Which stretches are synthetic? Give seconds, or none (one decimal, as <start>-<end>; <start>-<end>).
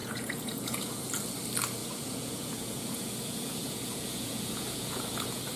0.0-1.1; 1.8-5.6